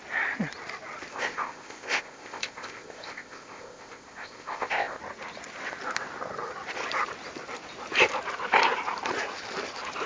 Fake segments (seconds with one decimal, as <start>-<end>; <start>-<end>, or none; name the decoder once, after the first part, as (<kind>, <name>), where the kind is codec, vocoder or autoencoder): 1.1-5.0 (codec, ZipCodec)